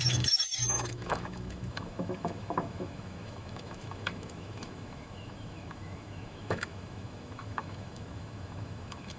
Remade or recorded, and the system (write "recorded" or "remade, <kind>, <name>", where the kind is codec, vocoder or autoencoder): remade, autoencoder, DAC-VAE